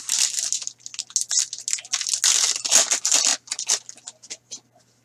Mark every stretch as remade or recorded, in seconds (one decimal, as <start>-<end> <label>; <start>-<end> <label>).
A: 0.0-5.0 recorded